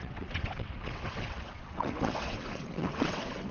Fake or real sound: fake